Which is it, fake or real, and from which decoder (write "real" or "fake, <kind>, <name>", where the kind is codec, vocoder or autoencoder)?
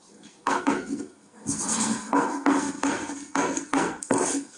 fake, codec, SNAC